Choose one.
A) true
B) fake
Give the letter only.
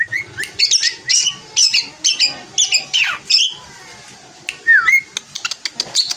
A